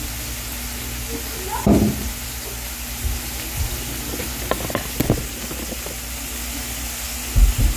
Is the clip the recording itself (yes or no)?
yes